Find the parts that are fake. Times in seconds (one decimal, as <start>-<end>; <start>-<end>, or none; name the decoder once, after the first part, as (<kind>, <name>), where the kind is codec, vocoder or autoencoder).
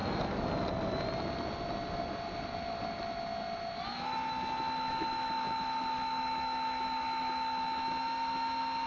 4.8-8.9 (autoencoder, DAC-VAE)